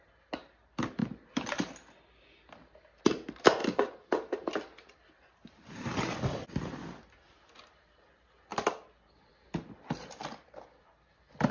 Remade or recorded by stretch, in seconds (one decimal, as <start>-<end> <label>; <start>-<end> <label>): 0.0-3.6 recorded; 3.6-5.9 remade; 5.9-11.5 recorded